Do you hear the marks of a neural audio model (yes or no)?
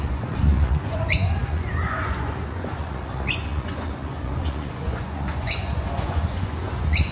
yes